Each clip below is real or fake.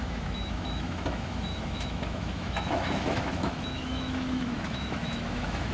fake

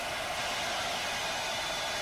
real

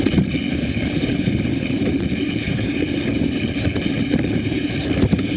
fake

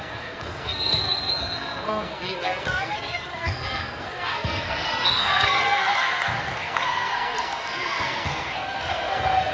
fake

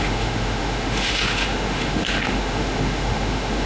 fake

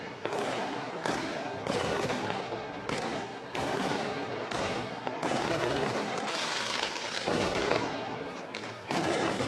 fake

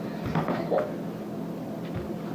real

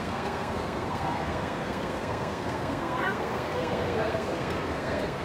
fake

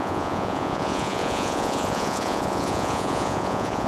fake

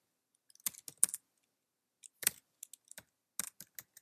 real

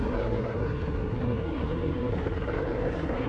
fake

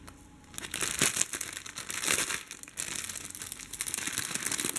real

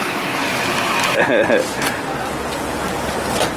real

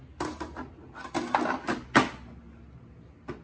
real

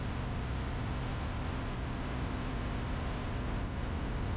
real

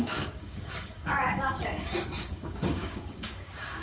fake